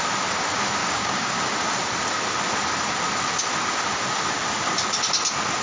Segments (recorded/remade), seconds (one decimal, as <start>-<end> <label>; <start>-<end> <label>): 0.0-0.8 recorded; 0.8-1.3 remade; 1.3-5.6 recorded